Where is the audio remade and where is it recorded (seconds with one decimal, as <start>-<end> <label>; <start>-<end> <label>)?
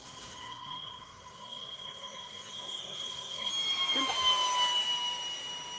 0.0-3.5 remade; 3.5-5.8 recorded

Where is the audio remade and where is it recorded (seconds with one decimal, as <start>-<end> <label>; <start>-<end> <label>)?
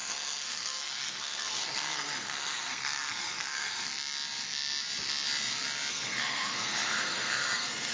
0.0-3.9 remade; 3.9-5.9 recorded; 5.9-7.9 remade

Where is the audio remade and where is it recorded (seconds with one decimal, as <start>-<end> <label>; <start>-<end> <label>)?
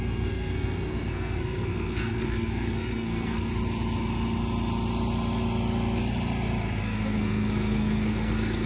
0.0-3.5 remade; 3.5-6.8 recorded; 6.8-8.7 remade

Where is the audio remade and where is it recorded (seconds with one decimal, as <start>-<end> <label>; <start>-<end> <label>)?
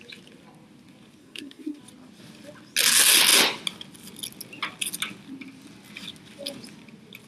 0.0-1.2 recorded; 1.2-1.8 remade; 1.8-7.3 recorded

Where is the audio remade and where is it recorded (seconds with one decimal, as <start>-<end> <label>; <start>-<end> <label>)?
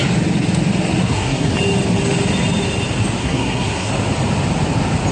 0.0-1.0 recorded; 1.0-1.5 remade; 1.5-3.2 recorded; 3.2-3.9 remade; 3.9-5.1 recorded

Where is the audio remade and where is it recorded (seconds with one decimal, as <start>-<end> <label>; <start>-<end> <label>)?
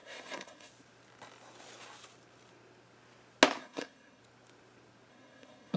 0.0-0.7 remade; 0.7-3.6 recorded; 3.6-4.2 remade; 4.2-5.1 recorded; 5.1-5.8 remade